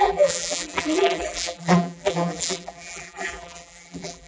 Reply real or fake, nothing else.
fake